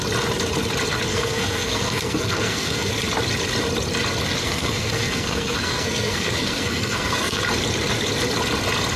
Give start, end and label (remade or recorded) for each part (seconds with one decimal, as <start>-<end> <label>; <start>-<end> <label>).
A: 0.0-1.1 recorded; 1.1-2.9 remade; 2.9-4.4 recorded; 4.4-7.4 remade; 7.4-9.0 recorded

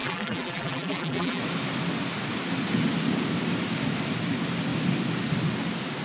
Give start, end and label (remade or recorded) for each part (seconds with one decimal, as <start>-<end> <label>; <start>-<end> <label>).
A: 0.0-1.4 remade; 1.4-6.0 recorded